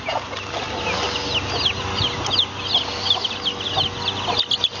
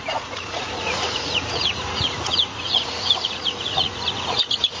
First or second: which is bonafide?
first